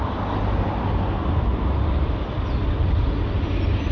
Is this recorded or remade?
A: recorded